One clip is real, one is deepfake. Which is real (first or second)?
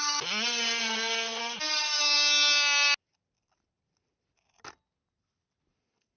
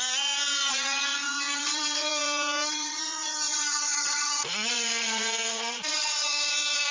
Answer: first